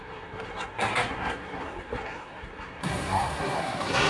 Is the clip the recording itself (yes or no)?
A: no